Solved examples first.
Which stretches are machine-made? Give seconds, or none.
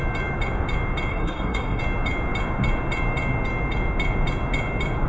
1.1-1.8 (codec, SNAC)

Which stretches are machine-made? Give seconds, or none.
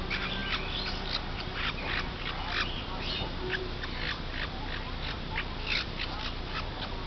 none